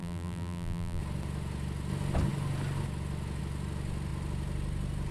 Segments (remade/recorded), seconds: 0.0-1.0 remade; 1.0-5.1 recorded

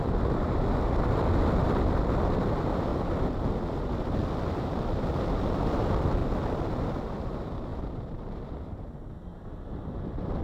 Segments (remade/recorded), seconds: 0.0-2.9 remade; 2.9-3.7 recorded; 3.7-6.2 remade; 6.2-7.1 recorded; 7.1-10.4 remade

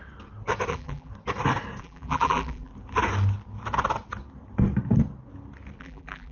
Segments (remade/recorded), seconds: 0.0-0.7 recorded; 0.7-1.1 remade; 1.1-1.8 recorded; 1.8-2.7 remade; 2.7-5.8 recorded; 5.8-6.3 remade

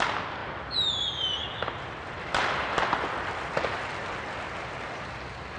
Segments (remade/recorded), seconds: 0.0-0.4 recorded; 0.4-0.9 remade; 0.9-1.4 recorded; 1.4-4.2 remade; 4.2-5.6 recorded

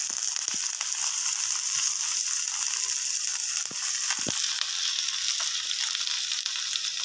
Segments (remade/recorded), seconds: 0.0-7.0 recorded

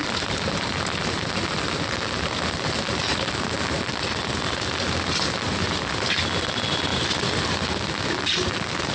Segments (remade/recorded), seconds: 0.0-8.9 recorded

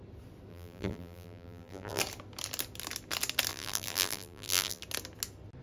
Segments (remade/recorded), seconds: 0.0-0.5 recorded; 0.5-2.0 remade; 2.0-3.5 recorded; 3.5-4.8 remade; 4.8-5.6 recorded

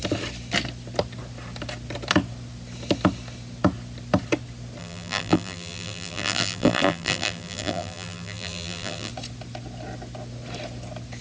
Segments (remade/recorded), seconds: 0.0-4.8 recorded; 4.8-9.1 remade; 9.1-11.2 recorded